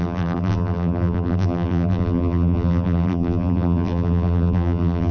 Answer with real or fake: fake